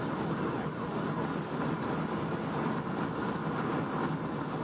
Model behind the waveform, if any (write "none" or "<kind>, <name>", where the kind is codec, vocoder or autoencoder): none